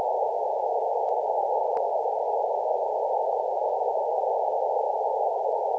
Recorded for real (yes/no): yes